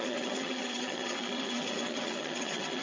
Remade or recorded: remade